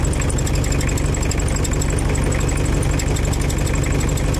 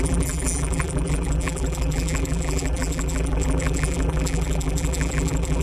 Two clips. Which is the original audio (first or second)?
first